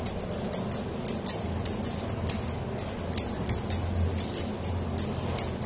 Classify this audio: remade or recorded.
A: recorded